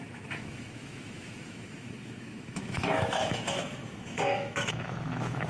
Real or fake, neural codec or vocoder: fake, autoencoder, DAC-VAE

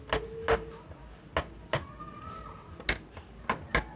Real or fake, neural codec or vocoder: real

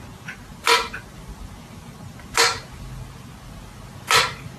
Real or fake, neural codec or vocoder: real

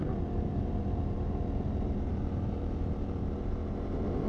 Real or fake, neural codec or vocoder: fake, vocoder, BigVGAN v2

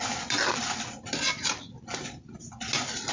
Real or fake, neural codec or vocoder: real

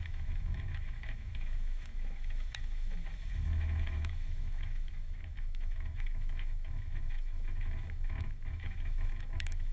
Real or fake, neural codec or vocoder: fake, autoencoder, DAC-VAE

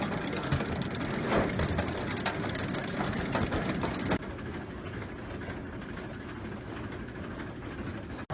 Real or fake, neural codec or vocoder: real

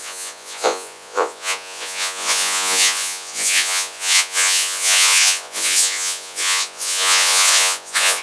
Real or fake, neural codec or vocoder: fake, vocoder, Vocos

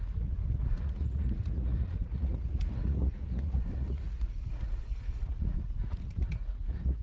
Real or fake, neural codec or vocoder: fake, vocoder, Vocos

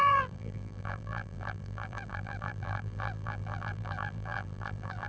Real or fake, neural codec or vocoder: fake, vocoder, BigVGAN v2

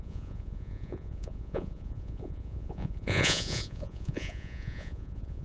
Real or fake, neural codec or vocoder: fake, vocoder, Vocos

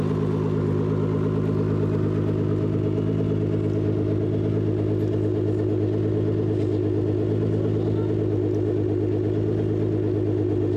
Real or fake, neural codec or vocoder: real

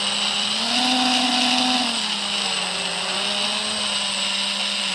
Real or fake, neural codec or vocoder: real